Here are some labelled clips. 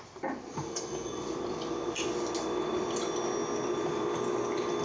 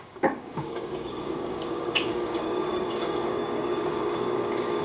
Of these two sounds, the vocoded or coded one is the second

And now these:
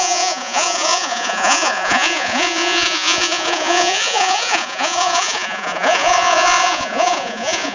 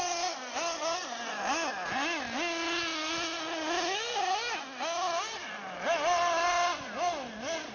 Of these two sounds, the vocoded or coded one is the first